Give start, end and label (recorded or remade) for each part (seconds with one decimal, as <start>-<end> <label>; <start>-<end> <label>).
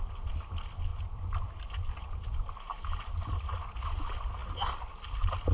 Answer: 0.0-4.4 recorded; 4.4-4.9 remade; 4.9-5.5 recorded